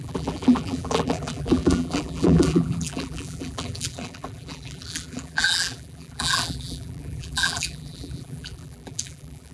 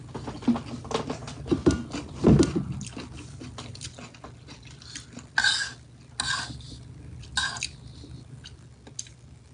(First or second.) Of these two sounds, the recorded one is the second